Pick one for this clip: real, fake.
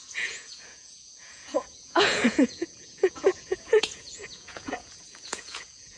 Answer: fake